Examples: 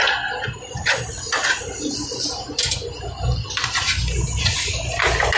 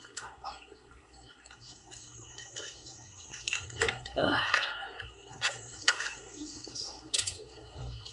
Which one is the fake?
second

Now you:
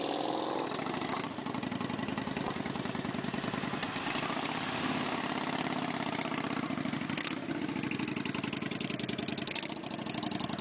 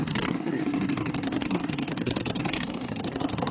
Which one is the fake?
second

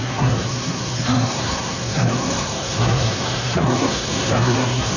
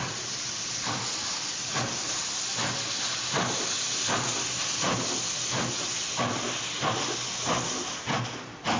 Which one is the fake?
first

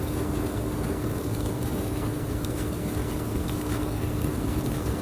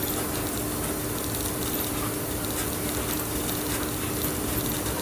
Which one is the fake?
first